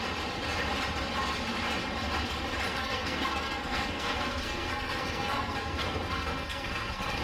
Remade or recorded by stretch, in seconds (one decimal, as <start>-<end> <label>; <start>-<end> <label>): 0.0-2.7 recorded; 2.7-7.2 remade